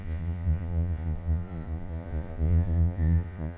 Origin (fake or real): fake